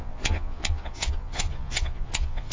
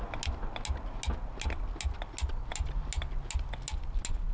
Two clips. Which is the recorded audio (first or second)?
second